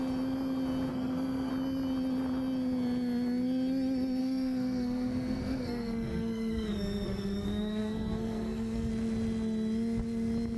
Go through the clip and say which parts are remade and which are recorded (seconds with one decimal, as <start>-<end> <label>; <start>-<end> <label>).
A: 0.0-0.9 recorded; 0.9-1.5 remade; 1.5-4.2 recorded; 4.2-8.9 remade; 8.9-10.6 recorded